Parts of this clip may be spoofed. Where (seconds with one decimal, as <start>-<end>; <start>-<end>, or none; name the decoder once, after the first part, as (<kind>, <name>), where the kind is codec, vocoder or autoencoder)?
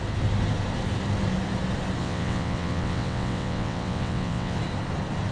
2.0-4.6 (vocoder, WaveNeXt)